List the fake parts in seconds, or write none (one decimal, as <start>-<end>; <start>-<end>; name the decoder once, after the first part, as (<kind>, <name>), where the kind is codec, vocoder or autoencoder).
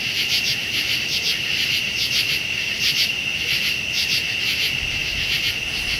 0.6-4.2 (vocoder, BigVGAN v2)